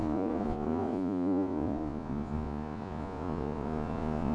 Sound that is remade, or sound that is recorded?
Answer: remade